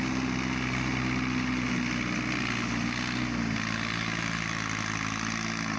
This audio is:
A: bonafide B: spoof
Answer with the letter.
A